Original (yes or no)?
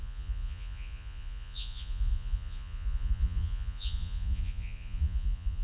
no